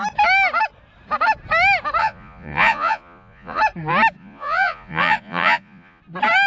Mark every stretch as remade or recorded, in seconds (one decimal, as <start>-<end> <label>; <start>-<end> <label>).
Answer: 0.0-2.0 recorded; 2.0-3.6 remade; 3.6-4.2 recorded; 4.2-6.0 remade; 6.0-6.5 recorded